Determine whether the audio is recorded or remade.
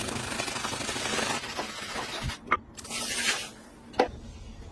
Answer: recorded